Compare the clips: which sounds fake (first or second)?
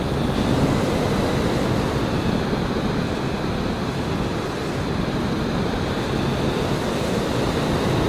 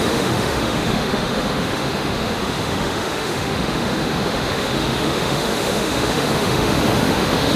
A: second